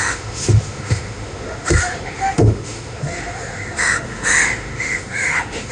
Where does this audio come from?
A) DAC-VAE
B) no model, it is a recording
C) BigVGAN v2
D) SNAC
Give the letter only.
A